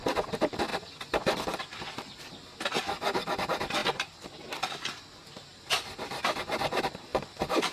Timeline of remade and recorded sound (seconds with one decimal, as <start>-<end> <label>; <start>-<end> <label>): 0.0-0.7 recorded; 0.7-2.3 remade; 2.3-5.5 recorded; 5.5-6.4 remade; 6.4-7.1 recorded; 7.1-7.7 remade